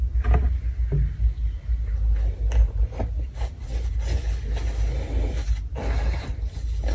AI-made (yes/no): no